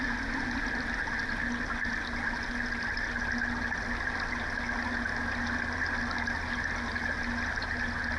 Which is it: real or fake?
real